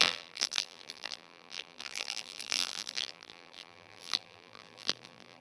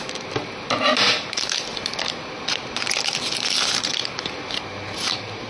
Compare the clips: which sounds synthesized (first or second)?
first